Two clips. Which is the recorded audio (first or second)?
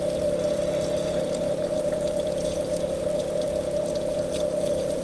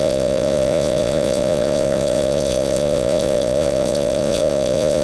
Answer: first